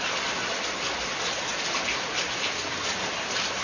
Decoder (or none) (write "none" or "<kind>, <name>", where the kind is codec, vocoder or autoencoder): none